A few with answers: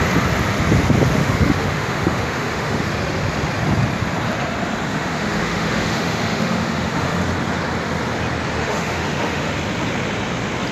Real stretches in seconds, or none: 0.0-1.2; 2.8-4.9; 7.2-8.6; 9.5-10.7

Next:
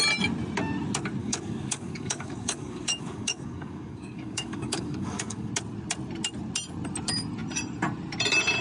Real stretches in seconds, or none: 0.0-1.2; 5.5-8.6

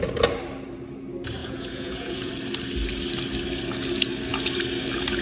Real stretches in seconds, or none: 0.0-1.4; 2.3-5.2